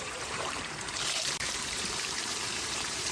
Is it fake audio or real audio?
fake